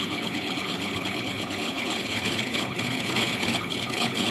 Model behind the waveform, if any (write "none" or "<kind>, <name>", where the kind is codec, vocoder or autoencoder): codec, HILCodec